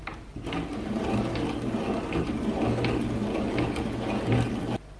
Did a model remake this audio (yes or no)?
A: no